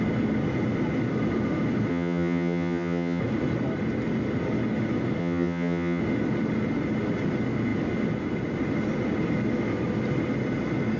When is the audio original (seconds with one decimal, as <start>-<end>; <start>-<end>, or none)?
0.0-1.9; 3.2-5.2; 6.0-11.0